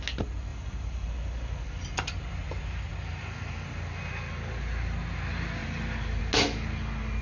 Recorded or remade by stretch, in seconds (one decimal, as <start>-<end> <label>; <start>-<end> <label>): 0.0-0.5 recorded; 0.5-1.1 remade; 1.1-5.6 recorded; 5.6-6.2 remade; 6.2-7.2 recorded